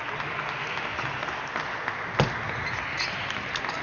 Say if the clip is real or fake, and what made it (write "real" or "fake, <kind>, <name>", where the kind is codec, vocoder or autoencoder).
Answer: real